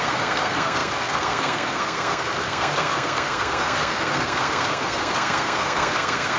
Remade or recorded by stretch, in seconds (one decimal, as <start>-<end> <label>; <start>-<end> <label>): 0.0-6.4 remade